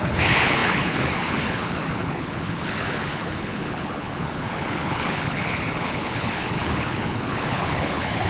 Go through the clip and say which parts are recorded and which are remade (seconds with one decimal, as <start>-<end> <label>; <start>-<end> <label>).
0.0-8.3 remade